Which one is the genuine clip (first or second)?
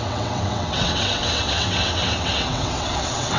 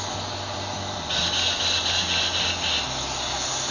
second